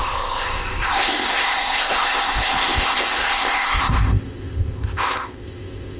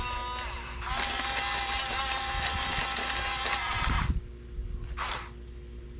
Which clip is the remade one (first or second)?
first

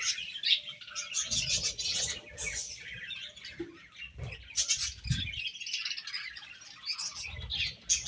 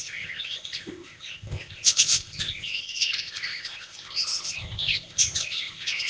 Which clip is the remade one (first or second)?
second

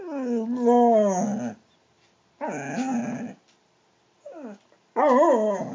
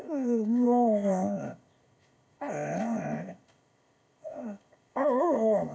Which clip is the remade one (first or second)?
second